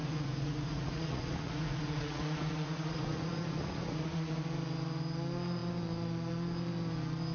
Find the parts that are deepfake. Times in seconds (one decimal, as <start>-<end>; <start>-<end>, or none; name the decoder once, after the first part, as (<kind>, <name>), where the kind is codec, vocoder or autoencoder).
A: 0.0-4.3 (vocoder, Vocos)